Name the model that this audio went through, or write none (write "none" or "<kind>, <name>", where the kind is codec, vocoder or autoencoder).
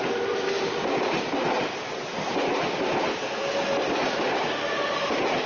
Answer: none